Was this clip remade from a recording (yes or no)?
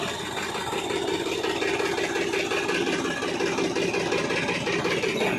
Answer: no